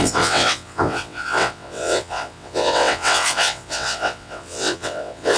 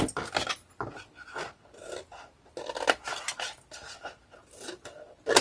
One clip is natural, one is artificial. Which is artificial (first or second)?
first